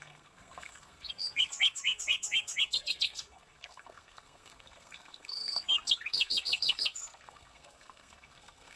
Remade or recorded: remade